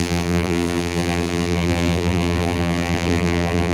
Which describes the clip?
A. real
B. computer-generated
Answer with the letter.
B